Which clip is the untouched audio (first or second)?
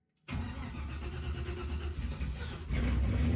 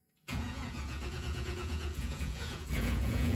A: first